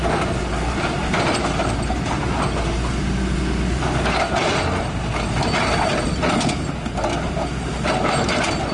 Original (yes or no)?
yes